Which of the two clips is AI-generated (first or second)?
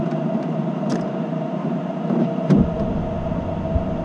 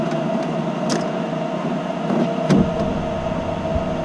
first